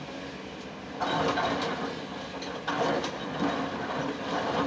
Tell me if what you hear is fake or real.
real